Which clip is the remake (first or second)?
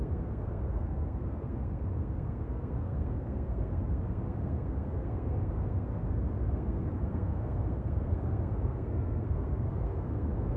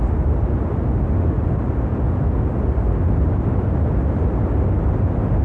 first